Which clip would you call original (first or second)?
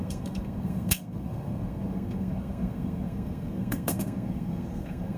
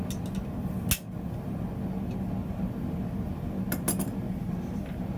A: second